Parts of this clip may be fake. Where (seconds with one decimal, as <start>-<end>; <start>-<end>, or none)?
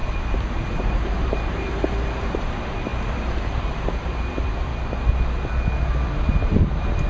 0.0-4.7; 6.0-7.1